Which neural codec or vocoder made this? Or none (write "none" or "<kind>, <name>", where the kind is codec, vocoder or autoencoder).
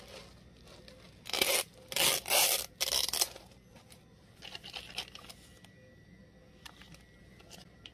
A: none